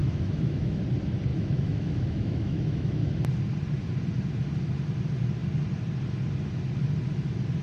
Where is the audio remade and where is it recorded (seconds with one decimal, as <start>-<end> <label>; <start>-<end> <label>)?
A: 0.0-0.8 remade; 0.8-1.3 recorded; 1.3-3.1 remade; 3.1-7.6 recorded

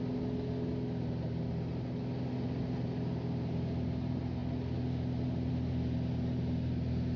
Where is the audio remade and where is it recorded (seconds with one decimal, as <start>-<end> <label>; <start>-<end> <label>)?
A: 0.0-7.2 recorded

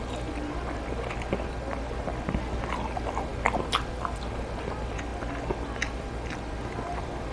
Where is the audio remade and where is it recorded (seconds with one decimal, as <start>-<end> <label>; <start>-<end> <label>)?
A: 0.0-7.3 recorded